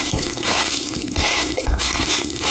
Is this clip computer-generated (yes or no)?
yes